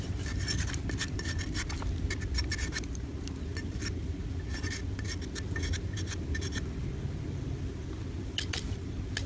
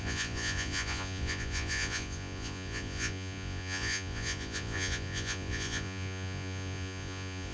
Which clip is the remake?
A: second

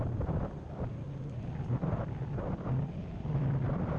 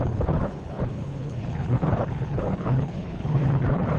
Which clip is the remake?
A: second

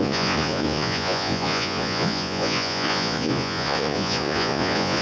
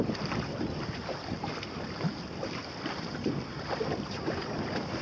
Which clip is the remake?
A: first